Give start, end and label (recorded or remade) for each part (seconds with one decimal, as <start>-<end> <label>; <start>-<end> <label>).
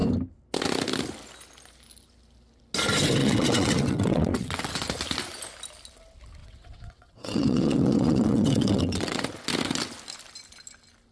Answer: 0.0-3.2 recorded; 3.2-4.7 remade; 4.7-6.4 recorded; 6.4-9.2 remade; 9.2-11.1 recorded